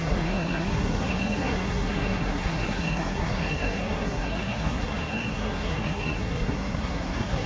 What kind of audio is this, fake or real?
fake